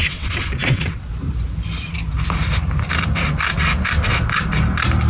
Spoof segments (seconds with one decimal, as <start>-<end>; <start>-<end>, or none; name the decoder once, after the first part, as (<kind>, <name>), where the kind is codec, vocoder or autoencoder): 0.0-1.1 (vocoder, WaveNeXt)